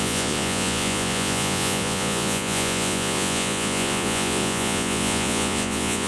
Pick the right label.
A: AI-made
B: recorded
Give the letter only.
A